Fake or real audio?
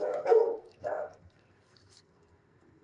fake